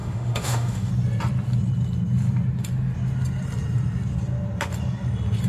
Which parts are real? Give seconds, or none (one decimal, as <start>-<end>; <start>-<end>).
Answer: 0.9-5.5